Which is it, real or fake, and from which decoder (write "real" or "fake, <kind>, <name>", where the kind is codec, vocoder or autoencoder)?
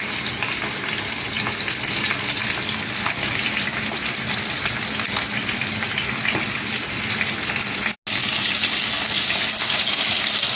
real